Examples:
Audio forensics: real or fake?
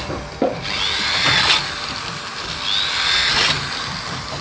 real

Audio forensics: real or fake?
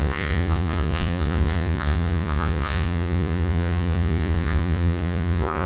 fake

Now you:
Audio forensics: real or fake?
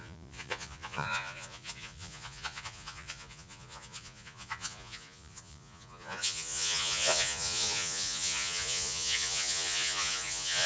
fake